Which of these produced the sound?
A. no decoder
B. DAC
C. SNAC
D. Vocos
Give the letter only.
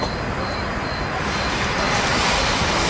A